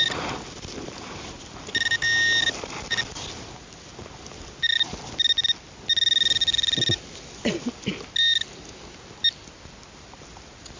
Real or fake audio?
real